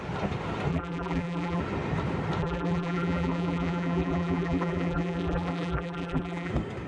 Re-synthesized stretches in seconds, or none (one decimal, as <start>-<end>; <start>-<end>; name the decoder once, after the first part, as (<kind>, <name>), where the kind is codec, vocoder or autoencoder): 0.7-1.6 (vocoder, BigVGAN v2); 2.4-6.5